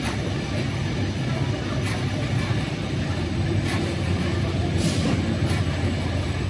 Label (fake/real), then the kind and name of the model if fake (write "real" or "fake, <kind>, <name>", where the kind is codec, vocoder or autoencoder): real